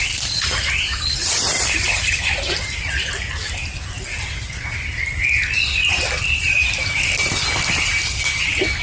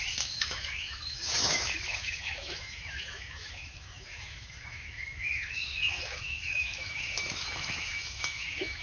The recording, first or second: first